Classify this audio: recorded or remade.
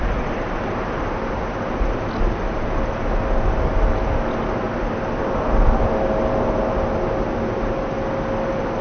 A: recorded